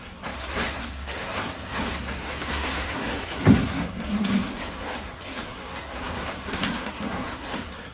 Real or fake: fake